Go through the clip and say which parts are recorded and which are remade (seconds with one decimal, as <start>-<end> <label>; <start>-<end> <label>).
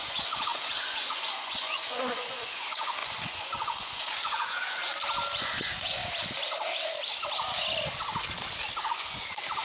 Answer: 0.0-4.8 remade; 4.8-5.4 recorded; 5.4-6.0 remade; 6.0-8.9 recorded; 8.9-9.6 remade